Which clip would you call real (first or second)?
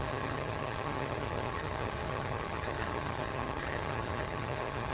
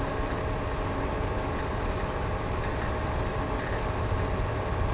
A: second